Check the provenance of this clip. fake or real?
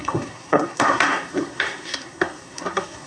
fake